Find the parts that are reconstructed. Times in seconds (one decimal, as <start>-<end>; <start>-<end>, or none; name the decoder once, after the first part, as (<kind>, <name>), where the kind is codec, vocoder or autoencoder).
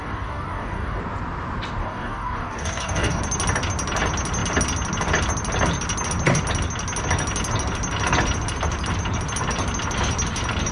0.0-1.0 (codec, DAC); 1.8-3.2